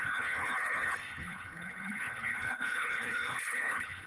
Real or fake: fake